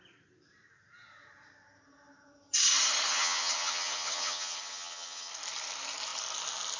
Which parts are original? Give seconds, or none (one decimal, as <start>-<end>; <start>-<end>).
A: 0.0-3.1; 5.3-6.8